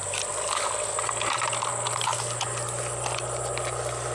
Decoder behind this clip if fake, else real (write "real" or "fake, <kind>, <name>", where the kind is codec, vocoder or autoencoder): real